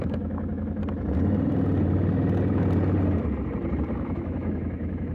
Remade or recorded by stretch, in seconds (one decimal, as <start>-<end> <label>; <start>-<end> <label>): 0.0-0.8 remade; 0.8-3.9 recorded; 3.9-5.1 remade